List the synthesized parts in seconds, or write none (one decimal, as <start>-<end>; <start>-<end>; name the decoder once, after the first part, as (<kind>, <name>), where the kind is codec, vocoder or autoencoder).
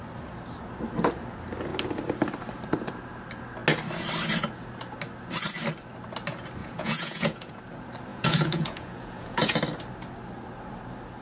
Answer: 6.6-7.6 (vocoder, Vocos); 8.1-9.6